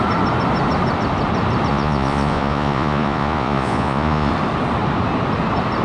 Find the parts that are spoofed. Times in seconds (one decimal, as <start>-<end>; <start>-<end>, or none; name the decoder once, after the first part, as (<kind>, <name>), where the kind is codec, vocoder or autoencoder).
1.7-4.3 (vocoder, Vocos)